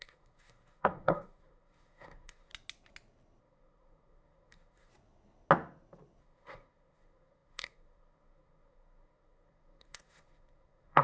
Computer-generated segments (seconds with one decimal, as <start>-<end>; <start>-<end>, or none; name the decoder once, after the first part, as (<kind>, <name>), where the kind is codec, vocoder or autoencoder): 0.0-2.5 (codec, SNAC); 3.4-4.9; 6.2-11.0